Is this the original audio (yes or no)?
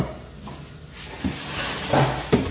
yes